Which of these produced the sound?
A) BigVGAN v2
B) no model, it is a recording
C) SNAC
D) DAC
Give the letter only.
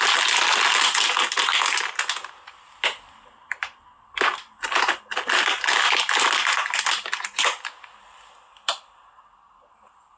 B